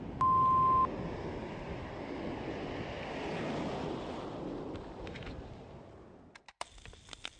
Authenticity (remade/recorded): recorded